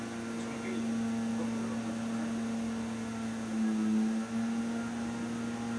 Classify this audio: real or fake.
real